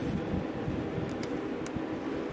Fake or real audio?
real